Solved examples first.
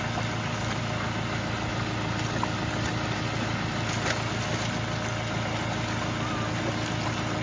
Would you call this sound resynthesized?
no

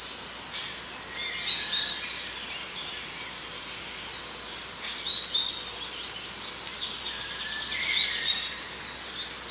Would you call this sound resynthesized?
no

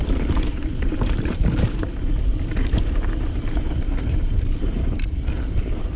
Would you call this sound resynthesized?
yes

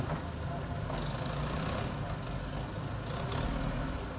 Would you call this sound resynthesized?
no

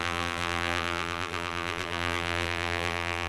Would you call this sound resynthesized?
yes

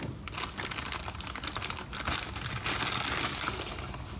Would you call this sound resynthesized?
no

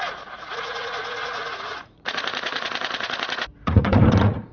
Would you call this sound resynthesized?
yes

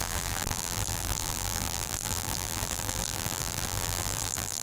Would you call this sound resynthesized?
yes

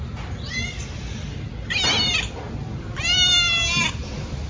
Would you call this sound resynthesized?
no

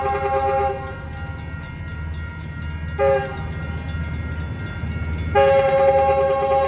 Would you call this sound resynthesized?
no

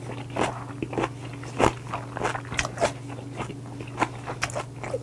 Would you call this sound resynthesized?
no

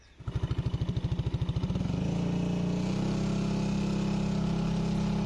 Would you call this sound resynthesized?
no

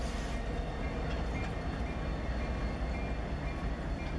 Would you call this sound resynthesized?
no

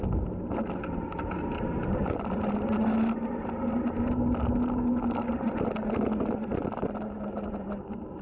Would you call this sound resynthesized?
no